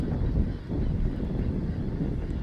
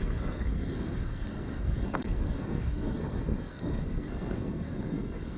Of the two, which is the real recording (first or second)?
first